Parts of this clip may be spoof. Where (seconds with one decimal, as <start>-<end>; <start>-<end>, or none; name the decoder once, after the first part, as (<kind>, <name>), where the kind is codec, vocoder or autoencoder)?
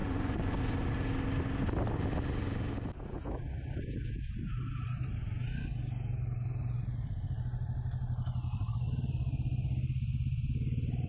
0.0-0.6 (vocoder, Vocos)